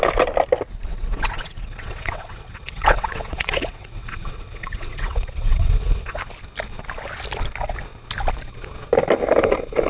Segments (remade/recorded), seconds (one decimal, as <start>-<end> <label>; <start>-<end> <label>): 0.0-0.9 recorded; 0.9-6.2 remade; 6.2-9.9 recorded